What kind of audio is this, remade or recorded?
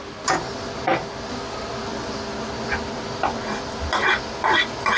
recorded